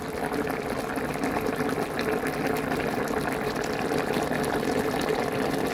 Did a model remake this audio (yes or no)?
no